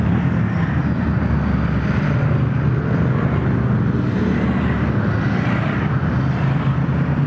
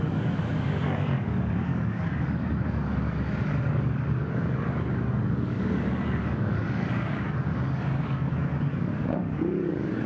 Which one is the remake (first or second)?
second